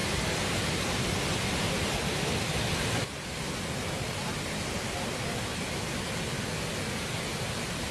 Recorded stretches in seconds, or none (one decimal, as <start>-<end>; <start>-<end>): 3.5-7.9